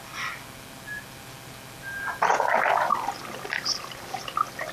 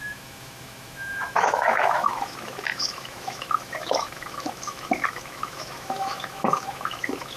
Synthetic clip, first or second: second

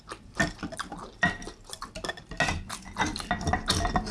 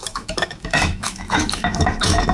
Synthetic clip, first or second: second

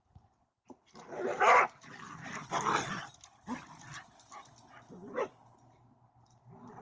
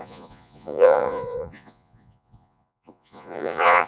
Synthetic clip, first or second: second